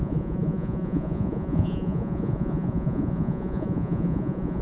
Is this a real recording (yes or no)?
no